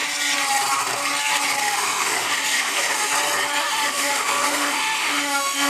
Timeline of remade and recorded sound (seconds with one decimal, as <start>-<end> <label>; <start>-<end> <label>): 0.0-1.6 recorded; 1.6-3.1 remade; 3.1-3.6 recorded; 3.6-5.7 remade

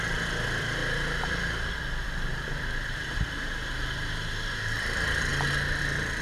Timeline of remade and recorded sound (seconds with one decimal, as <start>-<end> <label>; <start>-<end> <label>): 0.0-5.3 remade; 5.3-5.8 recorded; 5.8-6.2 remade

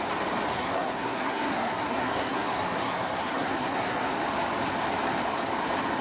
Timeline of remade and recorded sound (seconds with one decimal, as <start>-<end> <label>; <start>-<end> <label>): 0.0-0.5 recorded; 0.5-4.1 remade; 4.1-6.0 recorded